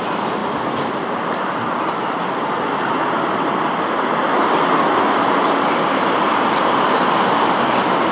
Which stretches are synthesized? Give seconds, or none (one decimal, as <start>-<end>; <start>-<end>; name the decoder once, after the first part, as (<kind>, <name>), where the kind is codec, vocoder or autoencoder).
none